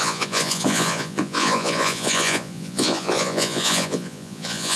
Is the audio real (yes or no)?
no